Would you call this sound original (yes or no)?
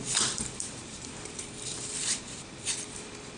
no